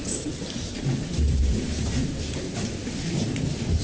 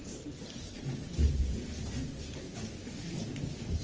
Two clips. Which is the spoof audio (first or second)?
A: first